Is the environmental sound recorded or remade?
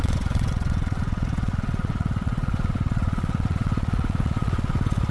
remade